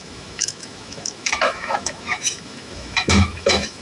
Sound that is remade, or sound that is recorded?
remade